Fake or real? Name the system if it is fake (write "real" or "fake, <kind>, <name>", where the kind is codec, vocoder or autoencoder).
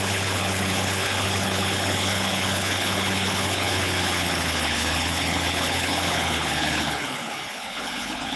fake, codec, HILCodec